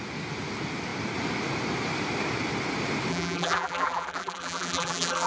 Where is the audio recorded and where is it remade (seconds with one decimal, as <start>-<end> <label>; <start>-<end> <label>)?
0.0-3.1 recorded; 3.1-5.3 remade